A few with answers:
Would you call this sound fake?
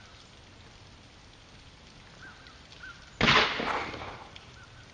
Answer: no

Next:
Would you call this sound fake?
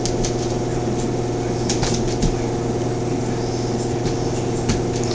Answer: no